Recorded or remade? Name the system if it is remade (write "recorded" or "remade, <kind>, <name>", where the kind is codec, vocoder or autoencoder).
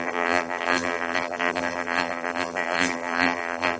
remade, vocoder, BigVGAN v2